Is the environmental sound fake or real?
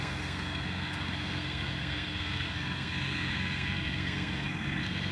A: fake